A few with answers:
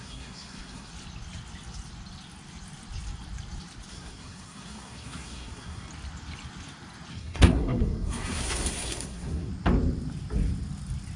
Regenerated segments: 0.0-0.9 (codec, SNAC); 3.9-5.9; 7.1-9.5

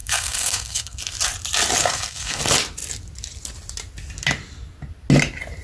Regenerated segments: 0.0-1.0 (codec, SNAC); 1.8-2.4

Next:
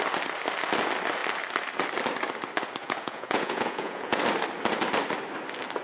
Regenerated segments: 2.8-4.2 (vocoder, Vocos)